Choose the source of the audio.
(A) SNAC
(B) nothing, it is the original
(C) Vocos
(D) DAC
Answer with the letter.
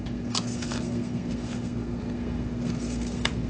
A